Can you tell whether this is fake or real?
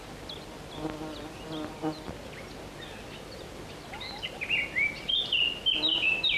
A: real